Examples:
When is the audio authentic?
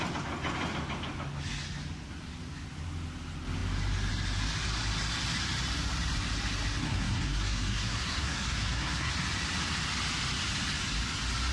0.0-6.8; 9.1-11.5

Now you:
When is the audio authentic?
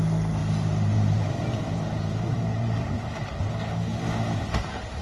0.0-0.4; 3.4-5.0